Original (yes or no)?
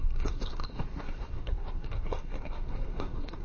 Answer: no